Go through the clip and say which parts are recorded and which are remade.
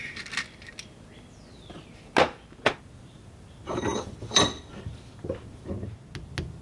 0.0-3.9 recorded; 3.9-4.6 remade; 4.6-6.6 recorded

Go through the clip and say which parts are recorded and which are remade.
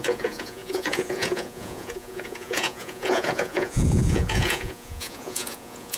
0.0-6.0 remade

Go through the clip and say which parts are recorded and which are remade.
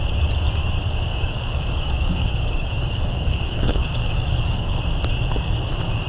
0.0-1.1 recorded; 1.1-4.8 remade; 4.8-6.1 recorded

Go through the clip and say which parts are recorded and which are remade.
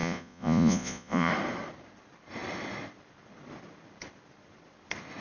0.0-1.3 remade; 1.3-5.2 recorded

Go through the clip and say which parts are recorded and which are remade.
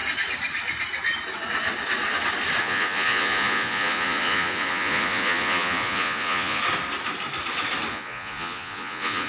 0.0-2.6 recorded; 2.6-6.6 remade; 6.6-7.9 recorded; 7.9-9.3 remade